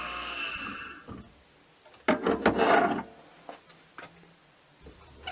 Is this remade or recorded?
recorded